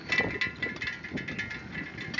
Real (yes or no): yes